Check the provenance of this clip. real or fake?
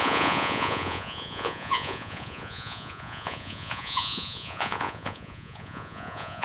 fake